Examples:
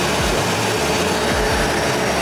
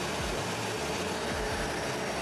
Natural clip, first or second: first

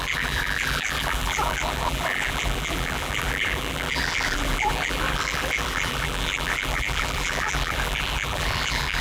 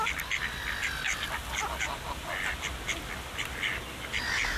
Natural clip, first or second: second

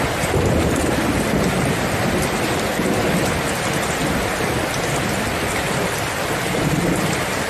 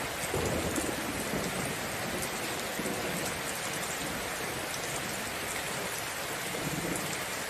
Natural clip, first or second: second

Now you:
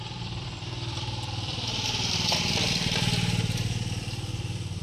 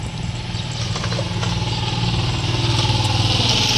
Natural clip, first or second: second